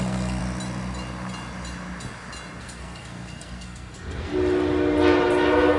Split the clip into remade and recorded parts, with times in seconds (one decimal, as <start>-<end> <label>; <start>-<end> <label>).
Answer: 0.0-0.4 remade; 0.4-2.6 recorded; 2.6-4.3 remade; 4.3-5.8 recorded

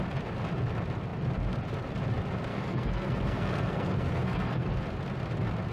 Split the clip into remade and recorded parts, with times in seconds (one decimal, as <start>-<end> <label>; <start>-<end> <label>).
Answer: 0.0-2.5 recorded; 2.5-4.8 remade; 4.8-5.7 recorded

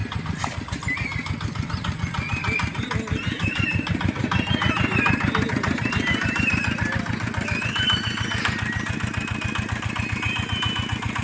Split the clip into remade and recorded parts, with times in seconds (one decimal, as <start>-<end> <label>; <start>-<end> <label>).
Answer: 0.0-11.2 recorded

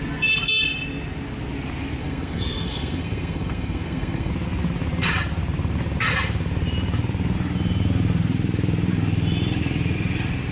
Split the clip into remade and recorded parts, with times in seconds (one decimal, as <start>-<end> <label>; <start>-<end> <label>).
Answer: 0.0-2.0 recorded; 2.0-4.3 remade; 4.3-10.5 recorded